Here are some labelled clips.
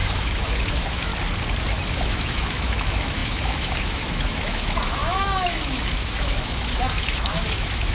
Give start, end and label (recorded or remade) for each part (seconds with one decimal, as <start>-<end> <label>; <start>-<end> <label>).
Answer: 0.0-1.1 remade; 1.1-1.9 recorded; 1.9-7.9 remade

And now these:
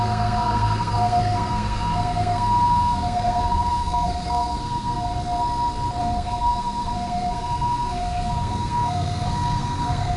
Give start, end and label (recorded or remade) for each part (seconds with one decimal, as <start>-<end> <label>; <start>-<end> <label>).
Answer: 0.0-5.1 remade; 5.1-6.0 recorded; 6.0-10.2 remade

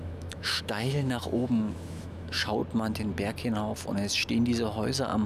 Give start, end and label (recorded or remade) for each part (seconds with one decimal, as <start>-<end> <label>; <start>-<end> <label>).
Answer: 0.0-2.6 remade; 2.6-5.3 recorded

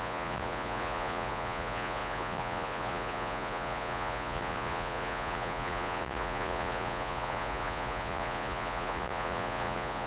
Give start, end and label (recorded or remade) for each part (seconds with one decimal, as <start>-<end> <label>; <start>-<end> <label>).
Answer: 0.0-10.1 remade